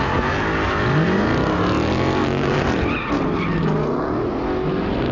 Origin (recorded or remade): recorded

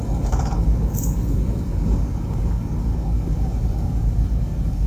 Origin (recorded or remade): remade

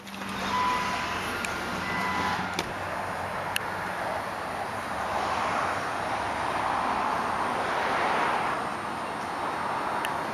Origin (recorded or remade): recorded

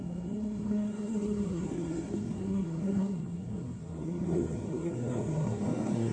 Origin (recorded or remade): remade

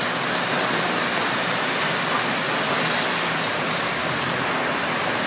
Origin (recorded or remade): recorded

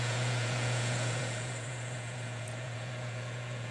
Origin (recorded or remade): remade